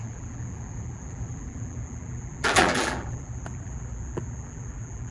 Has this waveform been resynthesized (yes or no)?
yes